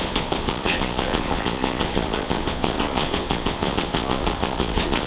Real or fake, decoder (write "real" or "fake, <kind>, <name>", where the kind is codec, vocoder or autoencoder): fake, vocoder, Vocos